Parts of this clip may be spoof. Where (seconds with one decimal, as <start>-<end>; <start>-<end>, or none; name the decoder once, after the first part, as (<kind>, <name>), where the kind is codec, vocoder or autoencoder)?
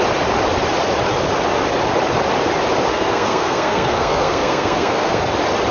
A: 2.9-5.2 (codec, SNAC)